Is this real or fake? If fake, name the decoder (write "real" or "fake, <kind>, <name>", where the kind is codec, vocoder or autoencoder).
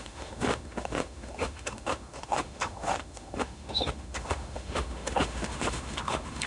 fake, autoencoder, DAC-VAE